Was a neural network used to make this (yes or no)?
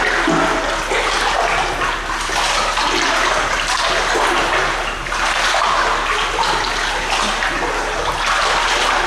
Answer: no